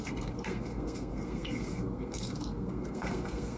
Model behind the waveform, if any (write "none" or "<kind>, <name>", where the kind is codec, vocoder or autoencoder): codec, SNAC